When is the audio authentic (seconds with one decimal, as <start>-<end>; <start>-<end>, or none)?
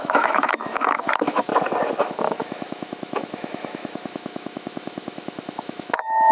1.5-2.0